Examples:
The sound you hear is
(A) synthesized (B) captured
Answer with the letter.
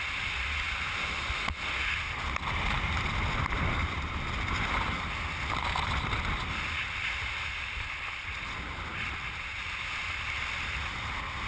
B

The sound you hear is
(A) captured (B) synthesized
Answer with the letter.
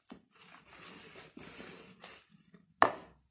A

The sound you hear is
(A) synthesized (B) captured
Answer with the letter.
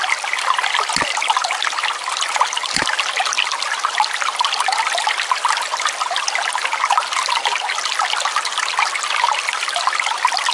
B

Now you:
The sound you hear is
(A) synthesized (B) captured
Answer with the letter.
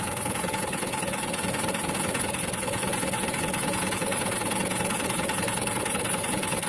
A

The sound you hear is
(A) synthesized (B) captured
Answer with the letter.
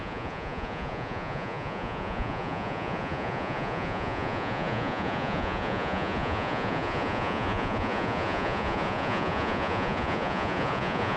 A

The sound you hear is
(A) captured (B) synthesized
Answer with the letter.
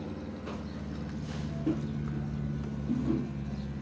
A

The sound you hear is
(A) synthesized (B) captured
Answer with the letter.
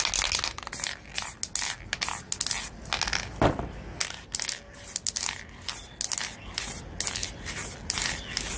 B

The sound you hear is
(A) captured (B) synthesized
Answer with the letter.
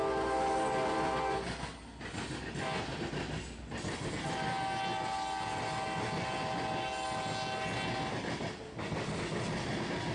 A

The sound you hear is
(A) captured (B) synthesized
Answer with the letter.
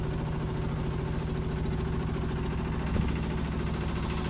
A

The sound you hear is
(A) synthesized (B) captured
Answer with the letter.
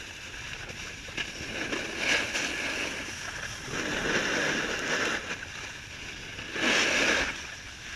B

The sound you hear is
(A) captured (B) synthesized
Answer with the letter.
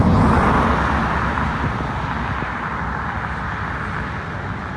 A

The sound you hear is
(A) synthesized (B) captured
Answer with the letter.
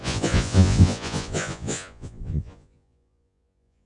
A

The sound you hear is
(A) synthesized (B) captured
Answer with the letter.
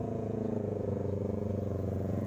A